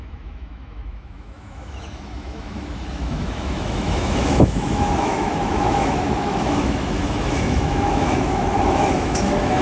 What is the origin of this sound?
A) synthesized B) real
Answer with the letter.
A